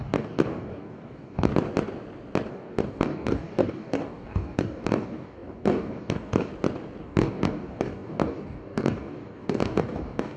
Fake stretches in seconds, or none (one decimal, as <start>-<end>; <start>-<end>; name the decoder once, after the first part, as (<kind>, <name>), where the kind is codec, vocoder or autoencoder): 0.0-1.5 (codec, DAC); 2.5-6.5; 7.0-10.4